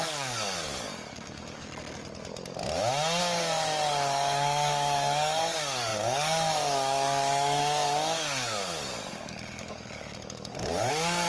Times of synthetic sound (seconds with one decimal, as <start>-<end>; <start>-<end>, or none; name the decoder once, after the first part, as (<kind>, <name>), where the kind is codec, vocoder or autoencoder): 0.0-1.6 (codec, DAC); 3.2-11.3